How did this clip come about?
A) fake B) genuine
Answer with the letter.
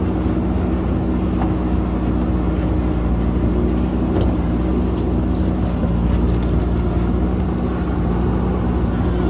B